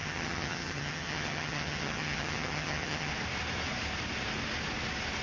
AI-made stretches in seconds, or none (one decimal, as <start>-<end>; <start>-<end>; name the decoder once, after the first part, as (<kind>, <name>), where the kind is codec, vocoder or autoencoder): 0.0-3.1 (vocoder, HiFi-GAN)